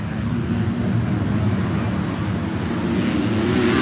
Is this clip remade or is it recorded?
recorded